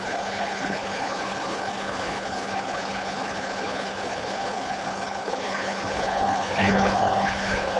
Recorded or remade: remade